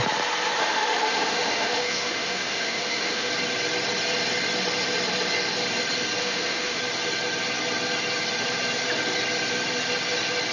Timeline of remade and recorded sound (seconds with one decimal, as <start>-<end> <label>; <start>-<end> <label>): 0.0-0.6 recorded; 0.6-3.3 remade; 3.3-6.2 recorded; 6.2-6.8 remade; 6.8-10.5 recorded